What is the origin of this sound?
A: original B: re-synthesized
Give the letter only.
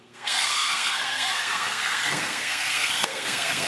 B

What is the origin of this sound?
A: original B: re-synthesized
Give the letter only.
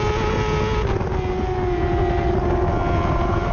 A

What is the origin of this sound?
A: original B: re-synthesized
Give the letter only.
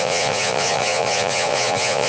B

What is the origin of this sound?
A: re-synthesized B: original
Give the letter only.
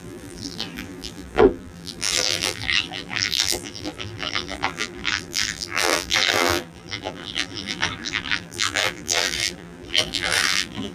A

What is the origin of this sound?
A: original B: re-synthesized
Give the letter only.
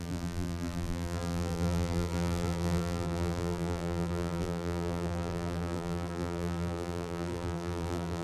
B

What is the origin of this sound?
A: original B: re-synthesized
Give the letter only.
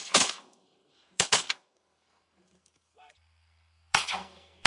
B